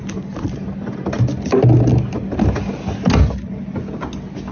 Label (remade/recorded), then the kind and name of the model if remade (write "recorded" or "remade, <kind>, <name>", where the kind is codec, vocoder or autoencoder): recorded